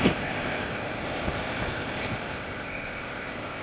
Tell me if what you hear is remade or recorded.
remade